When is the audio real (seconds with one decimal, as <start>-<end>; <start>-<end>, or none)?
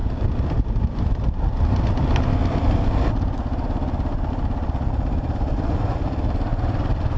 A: 4.3-7.2